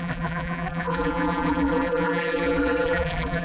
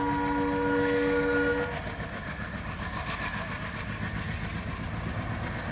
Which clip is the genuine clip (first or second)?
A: second